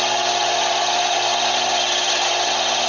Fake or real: real